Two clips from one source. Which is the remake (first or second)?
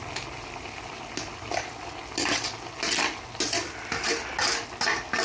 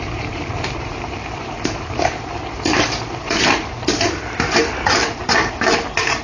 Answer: second